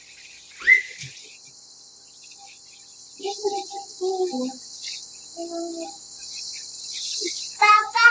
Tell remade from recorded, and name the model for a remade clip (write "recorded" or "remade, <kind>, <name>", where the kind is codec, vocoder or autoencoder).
recorded